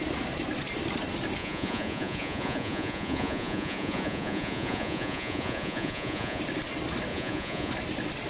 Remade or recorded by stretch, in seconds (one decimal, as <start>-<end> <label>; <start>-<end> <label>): 0.0-1.4 recorded; 1.4-6.4 remade; 6.4-7.1 recorded; 7.1-7.7 remade; 7.7-8.3 recorded